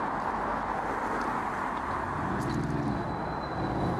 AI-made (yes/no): no